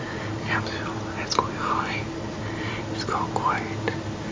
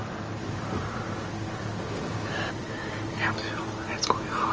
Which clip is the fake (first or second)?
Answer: first